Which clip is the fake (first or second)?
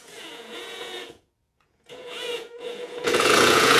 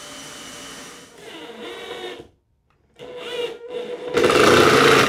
first